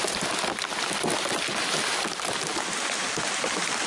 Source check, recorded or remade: recorded